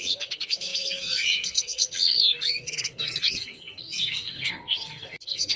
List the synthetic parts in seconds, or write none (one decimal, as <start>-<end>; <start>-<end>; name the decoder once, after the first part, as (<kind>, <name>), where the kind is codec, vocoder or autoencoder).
0.0-5.6 (codec, SNAC)